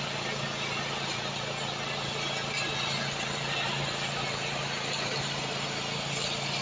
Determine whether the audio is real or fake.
real